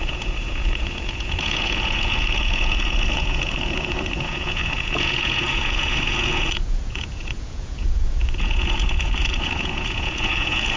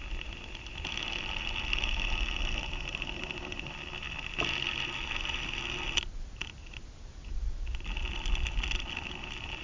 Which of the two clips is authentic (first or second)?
second